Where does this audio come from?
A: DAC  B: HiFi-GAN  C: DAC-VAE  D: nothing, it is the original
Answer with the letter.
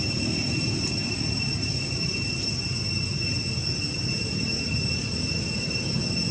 D